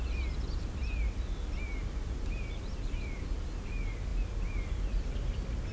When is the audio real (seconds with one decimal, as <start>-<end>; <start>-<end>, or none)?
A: 0.0-5.7